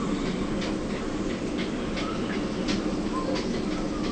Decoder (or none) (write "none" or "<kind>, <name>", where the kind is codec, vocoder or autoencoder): none